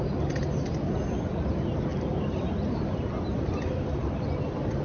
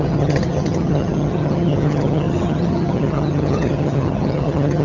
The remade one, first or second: second